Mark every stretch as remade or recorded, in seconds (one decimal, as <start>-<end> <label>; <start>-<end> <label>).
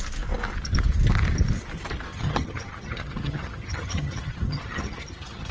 0.0-2.1 recorded; 2.1-5.5 remade